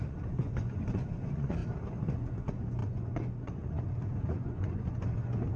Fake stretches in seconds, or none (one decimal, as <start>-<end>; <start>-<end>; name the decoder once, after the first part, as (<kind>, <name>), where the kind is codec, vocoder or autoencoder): 0.0-1.6 (vocoder, Vocos); 2.1-5.6